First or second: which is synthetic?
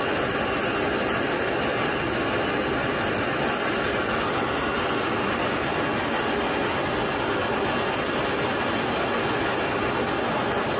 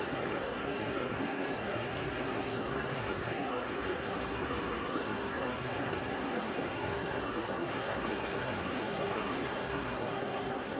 second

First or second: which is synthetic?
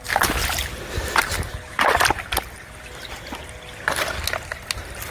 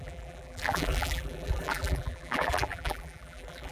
second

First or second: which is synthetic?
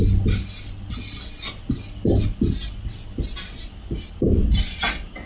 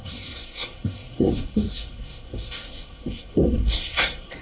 second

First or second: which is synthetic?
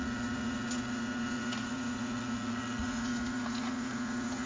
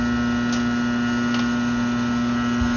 first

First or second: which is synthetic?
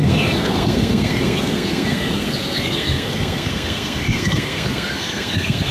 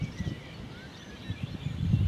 first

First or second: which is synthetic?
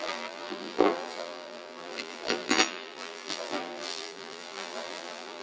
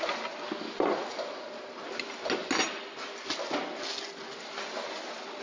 first